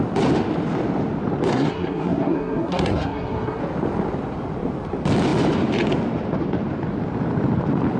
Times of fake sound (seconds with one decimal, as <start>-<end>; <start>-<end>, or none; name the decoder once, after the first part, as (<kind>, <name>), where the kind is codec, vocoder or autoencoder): 1.5-3.6 (codec, SNAC)